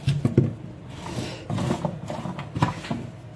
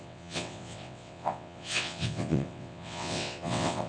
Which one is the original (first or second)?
first